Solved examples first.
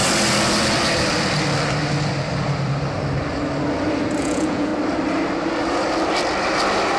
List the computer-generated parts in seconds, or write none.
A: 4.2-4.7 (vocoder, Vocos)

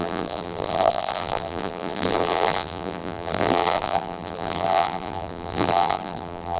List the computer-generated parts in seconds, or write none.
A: 0.0-6.6 (vocoder, BigVGAN v2)

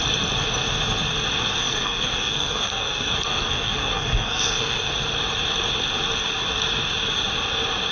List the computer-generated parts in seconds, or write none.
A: 1.6-4.9 (codec, SNAC)

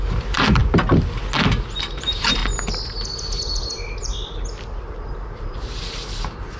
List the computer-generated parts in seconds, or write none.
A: 0.0-0.6 (vocoder, BigVGAN v2); 1.9-2.4; 3.4-4.1; 4.8-6.6